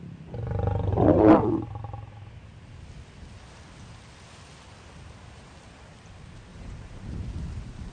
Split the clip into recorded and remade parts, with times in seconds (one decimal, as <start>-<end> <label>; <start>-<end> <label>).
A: 0.0-0.9 recorded; 0.9-1.7 remade; 1.7-6.5 recorded; 6.5-7.9 remade